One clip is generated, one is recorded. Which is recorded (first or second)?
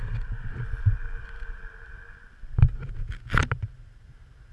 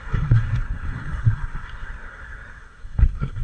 first